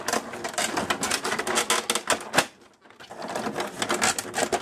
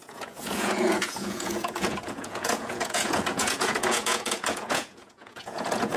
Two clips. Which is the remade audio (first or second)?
second